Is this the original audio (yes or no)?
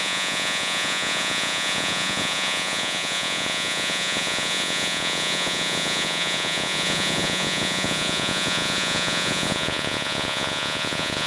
no